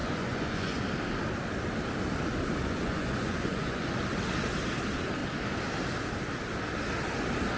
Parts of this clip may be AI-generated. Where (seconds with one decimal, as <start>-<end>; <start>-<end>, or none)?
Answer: 0.0-0.8; 2.6-3.8